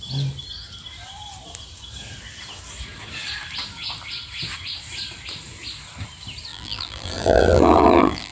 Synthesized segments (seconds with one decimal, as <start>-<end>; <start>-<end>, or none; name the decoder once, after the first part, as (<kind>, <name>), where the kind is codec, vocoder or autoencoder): 6.5-8.3 (vocoder, BigVGAN v2)